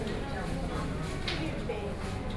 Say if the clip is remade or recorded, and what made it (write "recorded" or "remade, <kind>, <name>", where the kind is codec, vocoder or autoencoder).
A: recorded